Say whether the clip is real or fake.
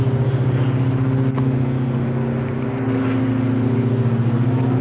real